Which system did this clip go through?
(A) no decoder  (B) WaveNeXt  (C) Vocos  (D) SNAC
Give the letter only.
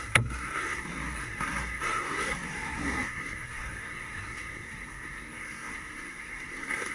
D